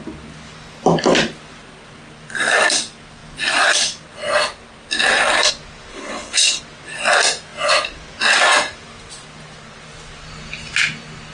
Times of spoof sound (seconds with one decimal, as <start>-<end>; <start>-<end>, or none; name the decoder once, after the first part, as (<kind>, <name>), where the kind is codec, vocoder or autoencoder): 5.9-6.6 (codec, HILCodec)